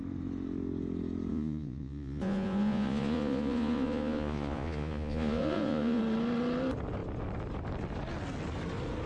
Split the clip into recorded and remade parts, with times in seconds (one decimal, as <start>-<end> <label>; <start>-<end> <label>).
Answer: 0.0-1.3 recorded; 1.3-6.0 remade; 6.0-9.1 recorded